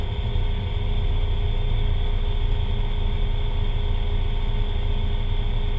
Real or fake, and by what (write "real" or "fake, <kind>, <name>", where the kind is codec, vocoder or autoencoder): real